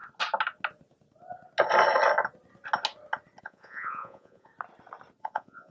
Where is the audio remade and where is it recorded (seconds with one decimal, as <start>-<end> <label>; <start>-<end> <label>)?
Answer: 0.0-3.4 recorded; 3.4-4.5 remade; 4.5-5.2 recorded; 5.2-5.7 remade